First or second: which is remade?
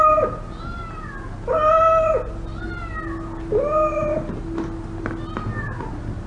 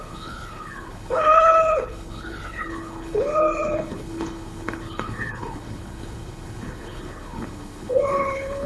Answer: second